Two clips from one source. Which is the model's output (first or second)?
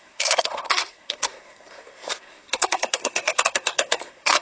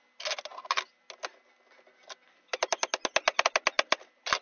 first